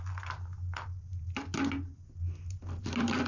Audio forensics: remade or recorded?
recorded